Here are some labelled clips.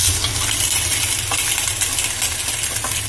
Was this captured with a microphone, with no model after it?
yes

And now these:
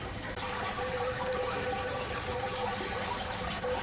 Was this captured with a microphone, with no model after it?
no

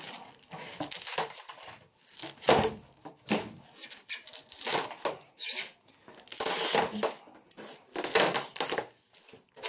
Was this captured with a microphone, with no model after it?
yes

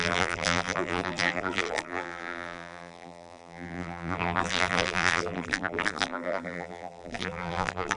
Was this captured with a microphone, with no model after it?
no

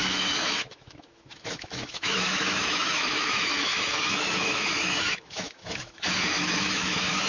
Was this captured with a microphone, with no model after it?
no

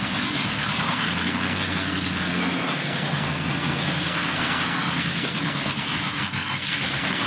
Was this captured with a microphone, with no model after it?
no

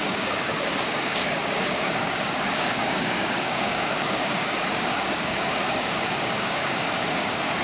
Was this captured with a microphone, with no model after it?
no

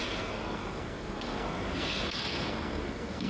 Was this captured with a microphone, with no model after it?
no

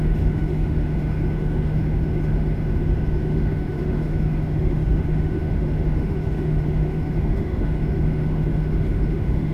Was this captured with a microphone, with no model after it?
no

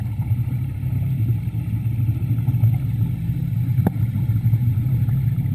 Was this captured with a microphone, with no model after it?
yes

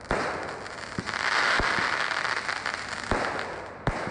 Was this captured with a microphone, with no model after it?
yes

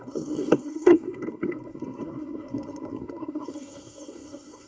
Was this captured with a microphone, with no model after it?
no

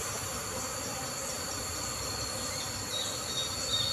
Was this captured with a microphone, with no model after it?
yes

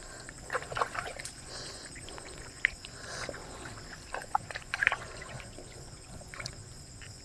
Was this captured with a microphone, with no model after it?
no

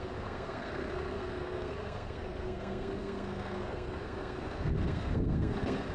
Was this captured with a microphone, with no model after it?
no